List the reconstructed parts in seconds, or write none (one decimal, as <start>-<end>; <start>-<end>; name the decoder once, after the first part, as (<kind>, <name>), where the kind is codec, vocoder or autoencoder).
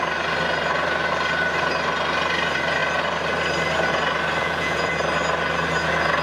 4.4-4.9 (vocoder, Vocos)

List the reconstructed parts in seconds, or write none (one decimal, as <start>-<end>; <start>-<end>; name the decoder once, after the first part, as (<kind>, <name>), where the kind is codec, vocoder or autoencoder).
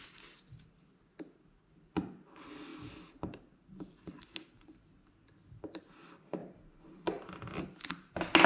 none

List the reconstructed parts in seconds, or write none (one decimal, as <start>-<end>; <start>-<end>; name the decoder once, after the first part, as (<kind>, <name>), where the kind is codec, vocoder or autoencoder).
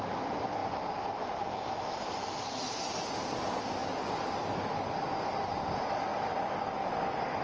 none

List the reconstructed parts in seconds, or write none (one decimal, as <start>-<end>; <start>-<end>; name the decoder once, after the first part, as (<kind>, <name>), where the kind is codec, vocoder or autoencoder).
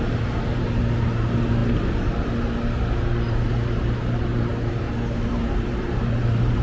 0.0-1.6 (vocoder, BigVGAN v2); 3.3-4.5; 5.2-6.6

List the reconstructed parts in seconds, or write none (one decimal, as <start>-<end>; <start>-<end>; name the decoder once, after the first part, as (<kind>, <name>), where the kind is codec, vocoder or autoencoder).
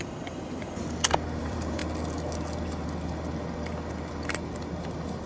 0.0-0.8 (vocoder, BigVGAN v2); 1.4-1.8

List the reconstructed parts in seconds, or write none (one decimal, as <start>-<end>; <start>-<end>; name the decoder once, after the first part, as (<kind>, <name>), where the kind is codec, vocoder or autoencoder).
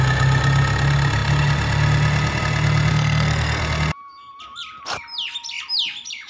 2.9-3.6 (codec, SNAC)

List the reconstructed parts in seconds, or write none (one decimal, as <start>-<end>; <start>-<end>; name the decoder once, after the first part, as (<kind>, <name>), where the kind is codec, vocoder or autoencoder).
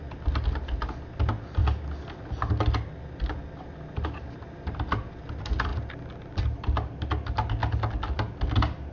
none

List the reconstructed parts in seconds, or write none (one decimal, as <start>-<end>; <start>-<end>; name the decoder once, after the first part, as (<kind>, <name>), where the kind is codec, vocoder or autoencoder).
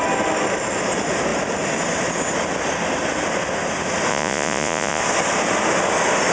4.1-5.0 (vocoder, Vocos)